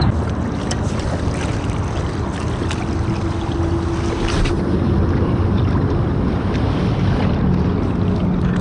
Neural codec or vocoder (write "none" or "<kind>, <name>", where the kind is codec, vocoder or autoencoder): none